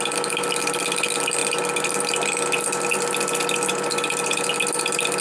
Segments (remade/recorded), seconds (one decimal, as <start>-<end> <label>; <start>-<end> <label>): 0.0-5.2 recorded